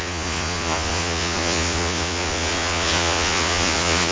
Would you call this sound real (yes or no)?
no